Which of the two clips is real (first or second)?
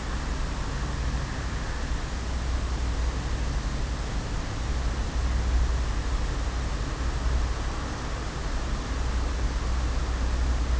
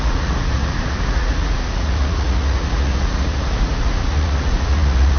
first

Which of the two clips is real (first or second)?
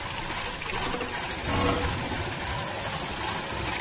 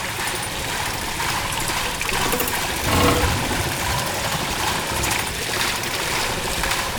first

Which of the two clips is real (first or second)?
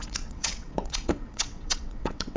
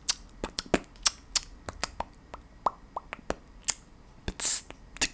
second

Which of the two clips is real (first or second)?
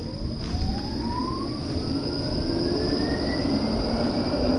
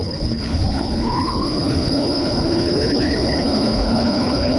first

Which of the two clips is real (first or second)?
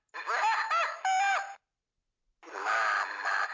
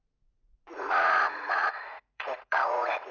first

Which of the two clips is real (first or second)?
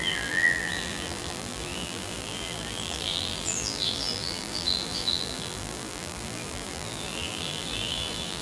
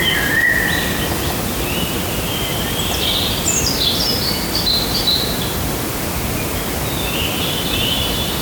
second